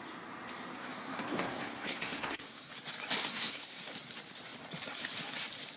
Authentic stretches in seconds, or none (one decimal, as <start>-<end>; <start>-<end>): 0.0-0.8; 2.7-3.2; 3.8-5.8